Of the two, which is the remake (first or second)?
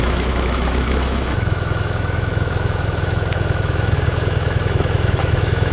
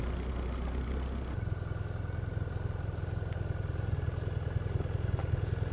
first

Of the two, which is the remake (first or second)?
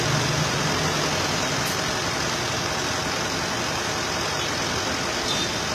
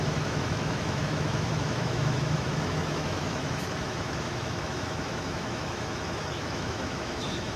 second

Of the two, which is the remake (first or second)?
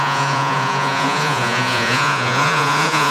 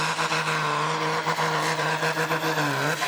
first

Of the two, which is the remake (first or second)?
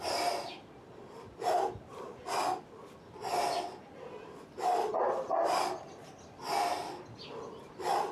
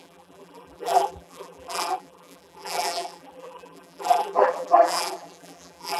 second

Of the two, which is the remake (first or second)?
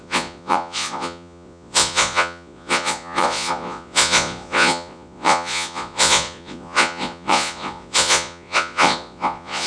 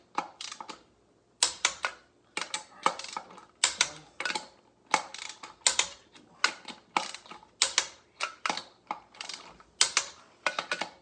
first